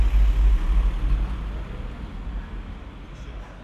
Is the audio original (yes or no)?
yes